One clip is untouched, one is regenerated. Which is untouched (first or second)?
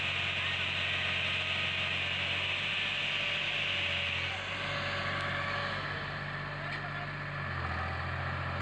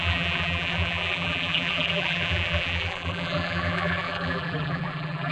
first